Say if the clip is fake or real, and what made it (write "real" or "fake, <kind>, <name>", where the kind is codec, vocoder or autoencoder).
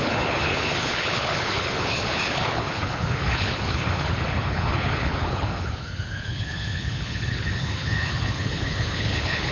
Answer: fake, codec, HILCodec